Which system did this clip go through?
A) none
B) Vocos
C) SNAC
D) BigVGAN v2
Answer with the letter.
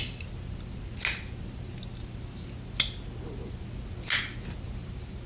A